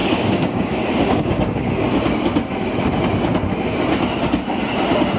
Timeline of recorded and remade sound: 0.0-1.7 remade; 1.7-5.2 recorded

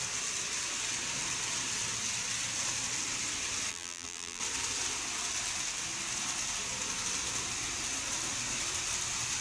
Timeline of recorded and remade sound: 0.0-3.7 recorded; 3.7-4.4 remade; 4.4-9.4 recorded

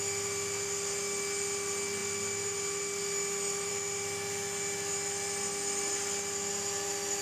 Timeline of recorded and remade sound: 0.0-7.2 recorded

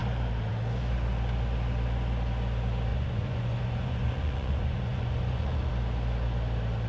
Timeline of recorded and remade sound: 0.0-2.9 recorded; 2.9-5.7 remade; 5.7-6.9 recorded

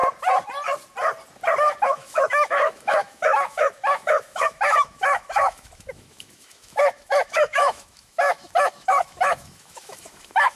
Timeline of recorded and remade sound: 0.0-1.8 recorded; 1.8-10.6 remade

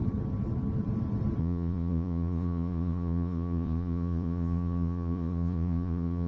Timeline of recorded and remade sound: 0.0-1.4 recorded; 1.4-6.3 remade

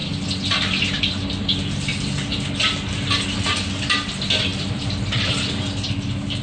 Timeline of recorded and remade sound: 0.0-4.5 recorded; 4.5-5.3 remade; 5.3-6.4 recorded

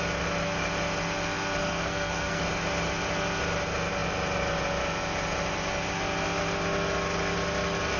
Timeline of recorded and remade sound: 0.0-1.6 recorded; 1.6-2.4 remade; 2.4-8.0 recorded